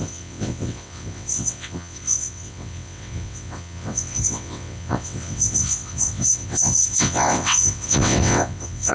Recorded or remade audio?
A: remade